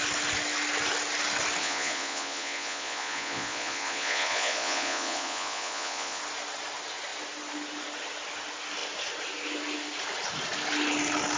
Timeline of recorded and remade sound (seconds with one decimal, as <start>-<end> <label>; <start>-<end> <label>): 0.0-1.6 recorded; 1.6-6.2 remade; 6.2-11.4 recorded